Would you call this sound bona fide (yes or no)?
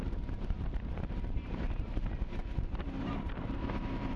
no